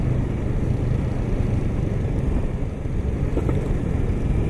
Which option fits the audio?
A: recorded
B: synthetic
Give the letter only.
A